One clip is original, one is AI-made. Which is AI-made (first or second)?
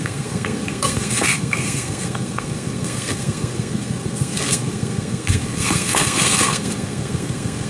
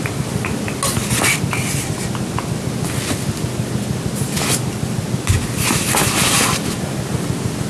first